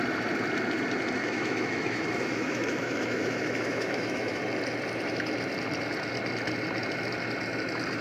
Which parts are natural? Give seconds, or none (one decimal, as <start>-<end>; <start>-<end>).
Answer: 0.0-1.2; 4.4-8.0